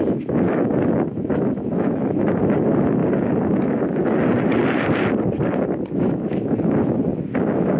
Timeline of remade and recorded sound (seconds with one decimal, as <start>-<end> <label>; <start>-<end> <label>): 0.0-3.0 remade; 3.0-5.9 recorded; 5.9-7.1 remade; 7.1-7.8 recorded